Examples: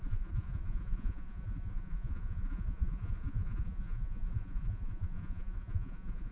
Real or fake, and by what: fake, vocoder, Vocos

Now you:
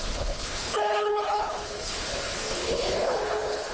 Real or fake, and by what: fake, codec, HILCodec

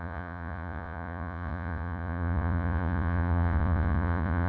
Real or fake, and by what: fake, vocoder, Vocos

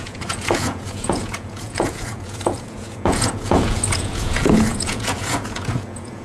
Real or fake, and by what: fake, vocoder, Vocos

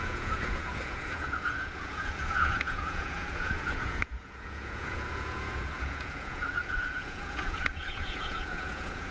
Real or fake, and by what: fake, vocoder, Vocos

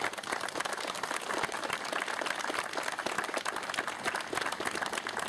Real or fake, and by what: real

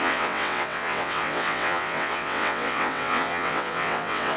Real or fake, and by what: fake, vocoder, WaveNeXt